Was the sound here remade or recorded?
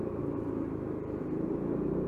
recorded